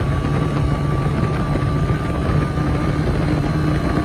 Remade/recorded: remade